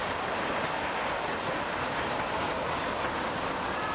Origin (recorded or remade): recorded